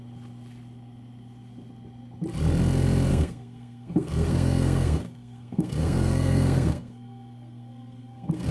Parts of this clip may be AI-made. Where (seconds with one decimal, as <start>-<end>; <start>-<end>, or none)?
3.1-8.5